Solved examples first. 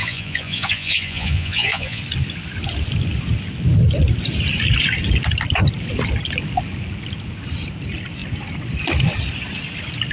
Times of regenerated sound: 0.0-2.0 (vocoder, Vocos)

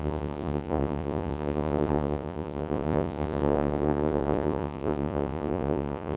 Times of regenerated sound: 0.0-6.2 (vocoder, Vocos)

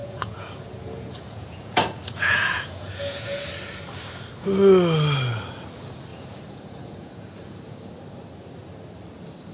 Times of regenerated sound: 0.0-3.4 (vocoder, Vocos); 6.1-7.9

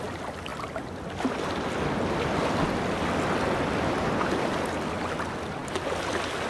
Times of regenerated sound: none

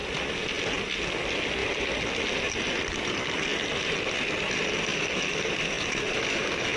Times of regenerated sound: none